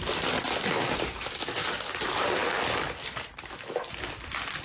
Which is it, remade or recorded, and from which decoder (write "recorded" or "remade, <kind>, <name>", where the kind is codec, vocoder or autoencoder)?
recorded